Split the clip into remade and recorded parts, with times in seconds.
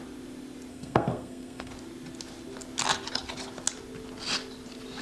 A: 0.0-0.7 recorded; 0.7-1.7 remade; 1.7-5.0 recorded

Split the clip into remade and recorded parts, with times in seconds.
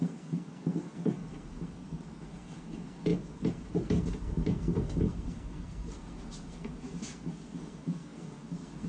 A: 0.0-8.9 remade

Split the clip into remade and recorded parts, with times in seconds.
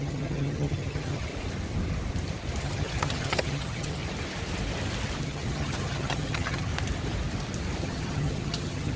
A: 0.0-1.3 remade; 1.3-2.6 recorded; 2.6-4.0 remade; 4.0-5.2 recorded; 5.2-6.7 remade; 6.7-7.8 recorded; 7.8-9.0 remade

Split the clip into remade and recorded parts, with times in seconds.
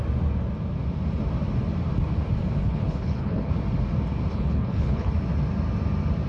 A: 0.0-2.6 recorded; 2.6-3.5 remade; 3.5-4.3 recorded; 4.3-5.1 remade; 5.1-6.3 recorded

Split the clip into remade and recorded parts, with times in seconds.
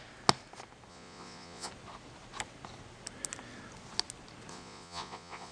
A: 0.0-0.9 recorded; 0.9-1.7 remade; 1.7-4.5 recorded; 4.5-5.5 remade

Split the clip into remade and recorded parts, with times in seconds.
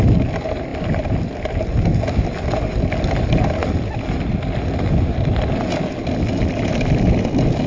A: 0.0-0.7 remade; 0.7-2.4 recorded; 2.4-3.6 remade; 3.6-6.5 recorded; 6.5-7.7 remade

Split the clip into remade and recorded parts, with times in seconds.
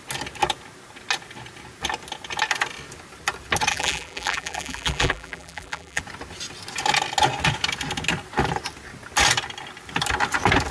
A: 0.0-3.7 recorded; 3.7-6.0 remade; 6.0-10.7 recorded